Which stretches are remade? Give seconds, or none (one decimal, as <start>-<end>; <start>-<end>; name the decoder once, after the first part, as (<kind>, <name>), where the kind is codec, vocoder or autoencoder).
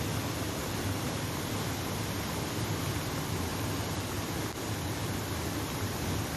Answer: 0.6-1.2 (vocoder, BigVGAN v2)